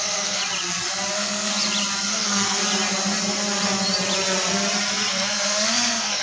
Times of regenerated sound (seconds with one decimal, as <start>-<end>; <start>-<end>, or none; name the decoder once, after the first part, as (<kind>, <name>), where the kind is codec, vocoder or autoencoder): 0.0-0.4 (codec, SNAC); 1.1-1.5; 2.1-2.6; 5.1-6.2